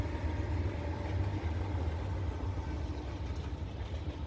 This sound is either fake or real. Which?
real